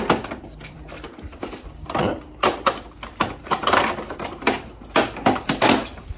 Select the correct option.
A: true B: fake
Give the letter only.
B